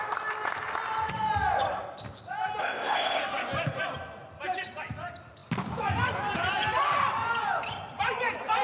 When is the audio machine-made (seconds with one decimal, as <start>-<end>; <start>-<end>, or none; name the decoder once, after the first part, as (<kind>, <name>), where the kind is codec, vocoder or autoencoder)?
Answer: 2.6-3.2 (codec, ZipCodec)